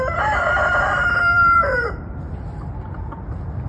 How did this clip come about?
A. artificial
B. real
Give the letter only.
A